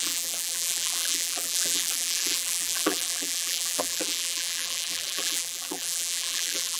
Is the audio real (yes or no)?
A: no